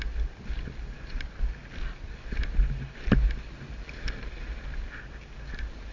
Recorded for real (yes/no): yes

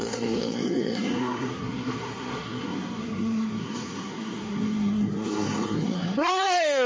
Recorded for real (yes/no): no